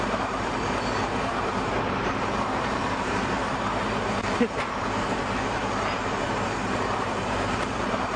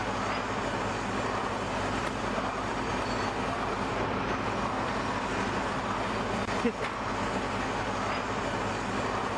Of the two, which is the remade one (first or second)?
first